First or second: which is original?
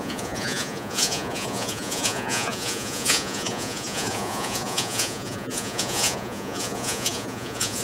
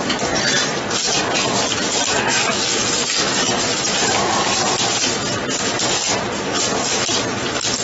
second